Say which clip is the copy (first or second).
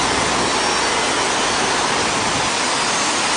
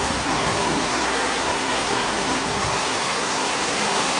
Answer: second